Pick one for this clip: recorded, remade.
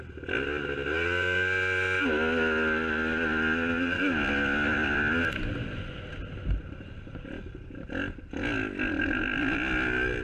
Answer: recorded